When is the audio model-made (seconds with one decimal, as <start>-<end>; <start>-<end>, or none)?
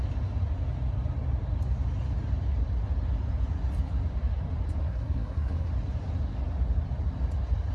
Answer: 4.8-5.7